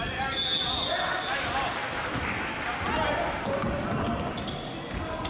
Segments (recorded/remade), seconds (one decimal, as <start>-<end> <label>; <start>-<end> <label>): 0.0-1.8 recorded; 1.8-2.6 remade; 2.6-5.3 recorded